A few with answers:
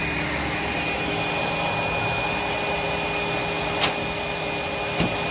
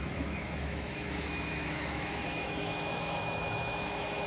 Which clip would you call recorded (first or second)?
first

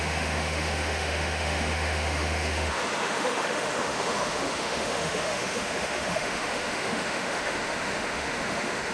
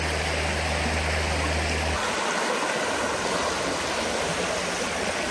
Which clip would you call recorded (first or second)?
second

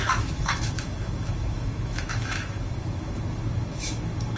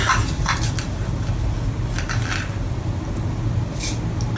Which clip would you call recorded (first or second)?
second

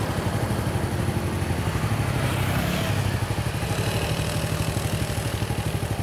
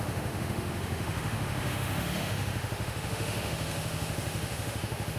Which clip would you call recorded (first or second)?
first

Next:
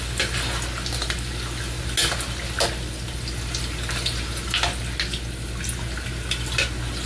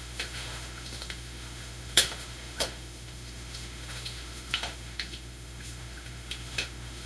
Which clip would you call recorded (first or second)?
first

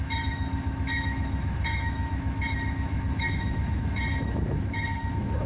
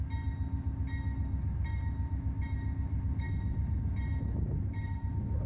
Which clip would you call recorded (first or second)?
second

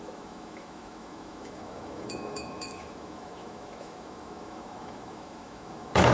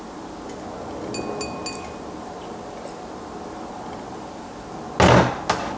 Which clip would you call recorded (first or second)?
second